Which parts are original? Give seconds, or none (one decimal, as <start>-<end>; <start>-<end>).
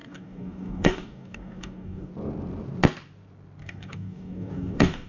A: 2.1-3.6